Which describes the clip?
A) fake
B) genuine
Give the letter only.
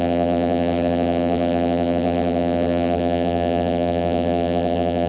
A